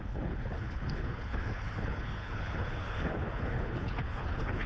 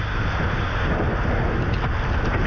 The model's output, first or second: first